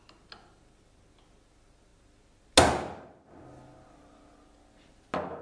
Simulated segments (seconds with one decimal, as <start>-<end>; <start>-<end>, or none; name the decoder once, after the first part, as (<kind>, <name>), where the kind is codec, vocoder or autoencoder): none